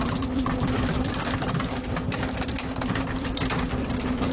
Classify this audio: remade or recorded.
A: remade